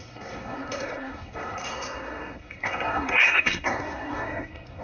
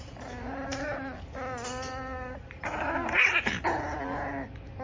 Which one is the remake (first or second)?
first